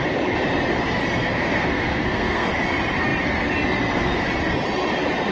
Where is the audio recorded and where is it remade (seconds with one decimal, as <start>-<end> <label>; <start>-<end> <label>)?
0.0-1.2 recorded; 1.2-2.5 remade; 2.5-5.3 recorded